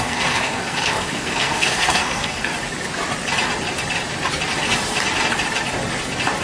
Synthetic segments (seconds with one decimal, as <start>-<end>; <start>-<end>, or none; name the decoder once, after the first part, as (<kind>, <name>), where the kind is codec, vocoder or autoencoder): 0.0-2.5 (codec, SNAC)